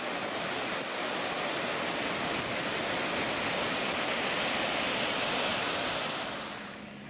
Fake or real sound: real